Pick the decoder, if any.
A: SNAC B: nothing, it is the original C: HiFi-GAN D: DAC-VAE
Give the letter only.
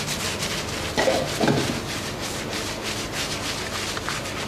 B